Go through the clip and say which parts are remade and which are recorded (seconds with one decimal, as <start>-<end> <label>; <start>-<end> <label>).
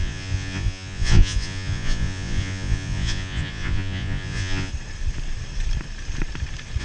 0.0-4.7 remade; 4.7-6.8 recorded